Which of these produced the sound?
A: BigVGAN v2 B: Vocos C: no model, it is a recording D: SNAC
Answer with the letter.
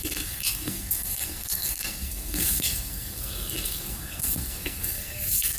D